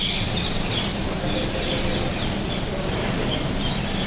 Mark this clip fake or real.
real